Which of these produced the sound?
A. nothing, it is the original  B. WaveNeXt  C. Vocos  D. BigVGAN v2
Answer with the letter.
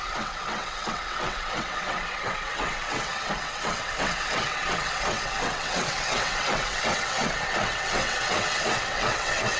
B